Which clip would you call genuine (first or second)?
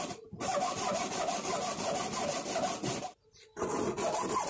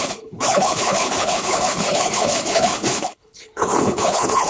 first